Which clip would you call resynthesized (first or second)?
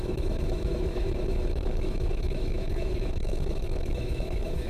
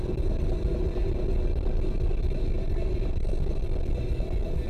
first